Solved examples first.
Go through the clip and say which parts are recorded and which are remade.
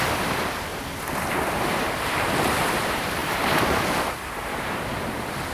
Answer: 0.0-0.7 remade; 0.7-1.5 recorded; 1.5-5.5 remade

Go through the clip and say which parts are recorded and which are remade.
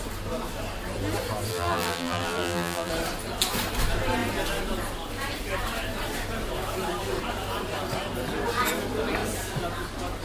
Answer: 0.0-1.5 recorded; 1.5-2.9 remade; 2.9-10.2 recorded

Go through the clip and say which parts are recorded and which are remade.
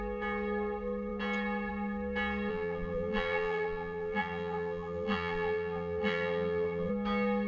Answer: 0.0-2.5 recorded; 2.5-6.9 remade; 6.9-7.5 recorded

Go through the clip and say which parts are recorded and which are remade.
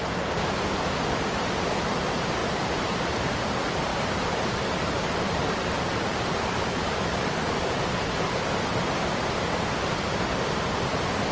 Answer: 0.0-2.4 recorded; 2.4-3.4 remade; 3.4-3.9 recorded; 3.9-7.8 remade; 7.8-11.3 recorded